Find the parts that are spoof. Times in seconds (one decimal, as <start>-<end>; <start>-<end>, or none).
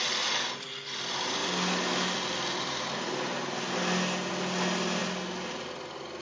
none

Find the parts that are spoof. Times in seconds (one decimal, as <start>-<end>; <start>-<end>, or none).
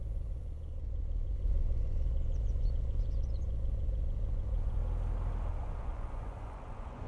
0.0-4.8; 5.5-7.1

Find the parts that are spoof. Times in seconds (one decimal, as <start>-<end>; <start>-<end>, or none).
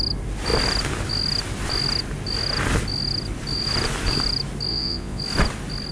4.7-5.2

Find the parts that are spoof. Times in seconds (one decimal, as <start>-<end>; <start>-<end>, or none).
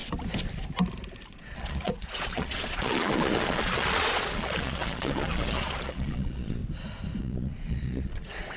1.3-6.6; 7.2-8.6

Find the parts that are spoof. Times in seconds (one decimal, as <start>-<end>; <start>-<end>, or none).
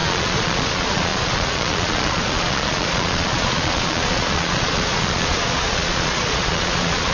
0.0-7.1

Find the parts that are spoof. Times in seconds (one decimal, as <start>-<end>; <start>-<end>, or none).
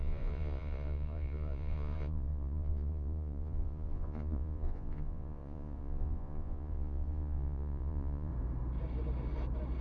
0.0-8.3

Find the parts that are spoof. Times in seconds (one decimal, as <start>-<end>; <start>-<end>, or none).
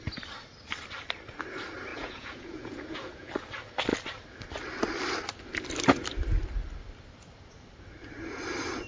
1.9-3.3